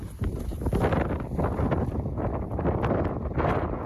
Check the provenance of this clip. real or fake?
real